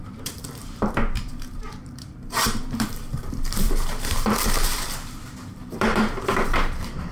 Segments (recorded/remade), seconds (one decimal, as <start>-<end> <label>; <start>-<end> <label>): 0.0-7.1 remade